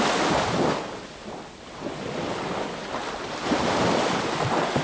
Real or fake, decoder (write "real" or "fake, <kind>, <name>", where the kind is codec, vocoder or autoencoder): real